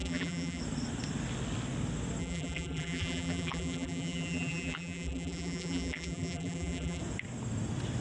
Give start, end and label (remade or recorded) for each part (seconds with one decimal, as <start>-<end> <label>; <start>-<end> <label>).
0.0-0.6 remade; 0.6-2.2 recorded; 2.2-7.0 remade; 7.0-8.0 recorded